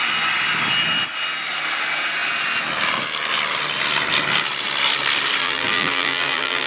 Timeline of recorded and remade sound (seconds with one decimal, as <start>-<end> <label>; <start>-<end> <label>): 0.0-5.4 recorded; 5.4-6.7 remade